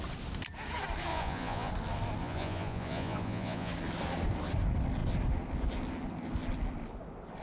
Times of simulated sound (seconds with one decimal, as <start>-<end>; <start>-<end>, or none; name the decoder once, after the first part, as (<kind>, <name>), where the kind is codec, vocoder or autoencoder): 1.1-1.7 (vocoder, Vocos); 2.2-3.7